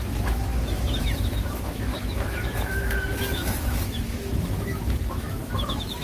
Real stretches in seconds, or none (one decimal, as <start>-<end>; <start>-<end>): none